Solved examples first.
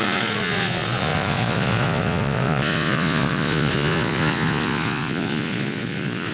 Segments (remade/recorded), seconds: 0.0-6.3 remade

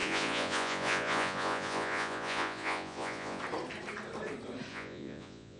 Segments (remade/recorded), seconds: 0.0-3.4 remade; 3.4-4.7 recorded; 4.7-5.6 remade

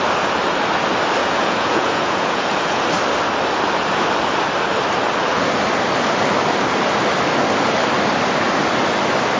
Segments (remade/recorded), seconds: 0.0-1.2 recorded; 1.2-2.8 remade; 2.8-9.4 recorded